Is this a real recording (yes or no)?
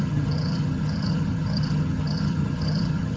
no